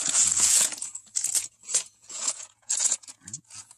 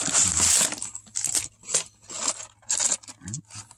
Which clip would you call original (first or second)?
second